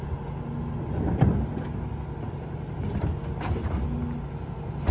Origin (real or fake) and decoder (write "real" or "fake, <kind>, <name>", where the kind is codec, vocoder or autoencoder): real